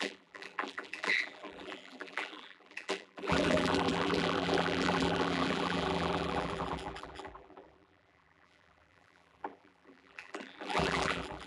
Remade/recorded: remade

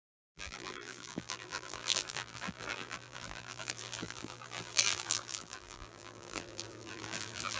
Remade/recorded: remade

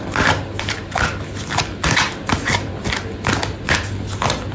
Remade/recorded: recorded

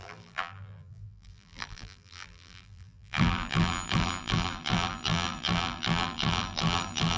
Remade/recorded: remade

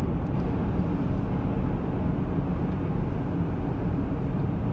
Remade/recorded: recorded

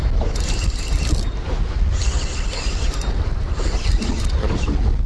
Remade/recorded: recorded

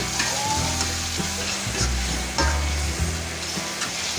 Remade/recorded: recorded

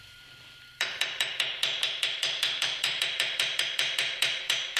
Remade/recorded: remade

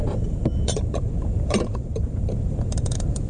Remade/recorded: remade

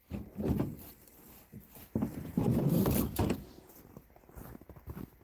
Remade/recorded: remade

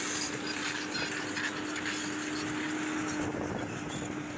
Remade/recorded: recorded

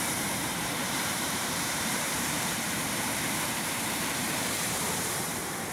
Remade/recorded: remade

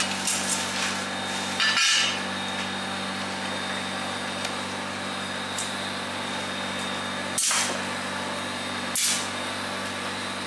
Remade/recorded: recorded